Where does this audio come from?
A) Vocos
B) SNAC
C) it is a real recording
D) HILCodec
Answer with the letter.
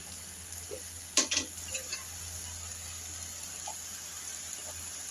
C